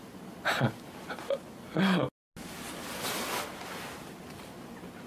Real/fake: real